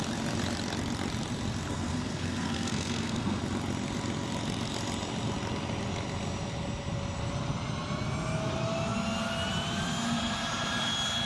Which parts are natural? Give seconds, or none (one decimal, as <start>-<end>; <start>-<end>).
0.0-1.7; 3.4-11.3